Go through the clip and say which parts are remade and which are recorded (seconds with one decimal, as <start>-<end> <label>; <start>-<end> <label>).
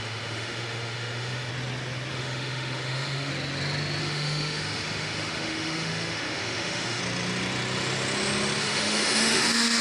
0.0-1.5 remade; 1.5-2.1 recorded; 2.1-3.3 remade; 3.3-4.0 recorded; 4.0-7.0 remade; 7.0-8.6 recorded; 8.6-9.8 remade